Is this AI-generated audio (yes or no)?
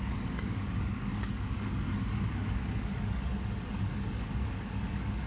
yes